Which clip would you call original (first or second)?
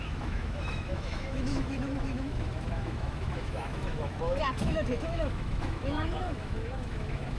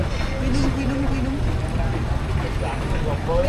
second